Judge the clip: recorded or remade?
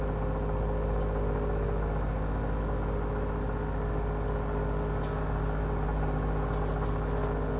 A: recorded